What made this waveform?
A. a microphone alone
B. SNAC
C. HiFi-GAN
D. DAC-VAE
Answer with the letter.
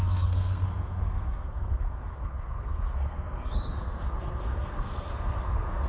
B